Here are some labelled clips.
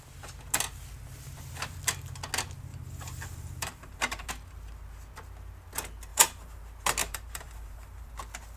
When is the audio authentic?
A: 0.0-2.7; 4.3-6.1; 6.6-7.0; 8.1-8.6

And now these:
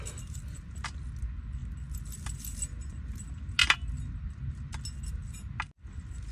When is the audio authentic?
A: 0.0-6.3

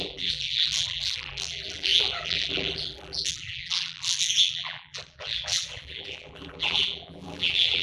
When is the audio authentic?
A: none

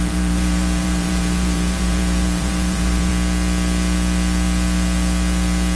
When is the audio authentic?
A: 3.1-5.8

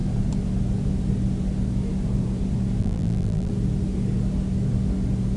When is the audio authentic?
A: 0.0-2.8; 3.5-5.4